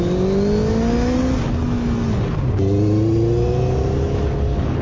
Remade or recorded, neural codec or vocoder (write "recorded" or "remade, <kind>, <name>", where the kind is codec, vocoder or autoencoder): recorded